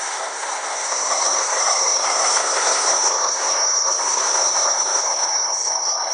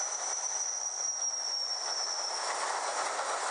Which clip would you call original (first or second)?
second